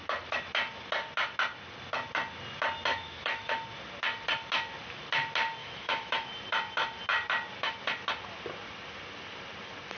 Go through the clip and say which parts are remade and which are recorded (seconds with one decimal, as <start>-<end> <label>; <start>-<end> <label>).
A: 0.0-2.9 recorded; 2.9-3.5 remade; 3.5-5.6 recorded; 5.6-6.3 remade; 6.3-10.0 recorded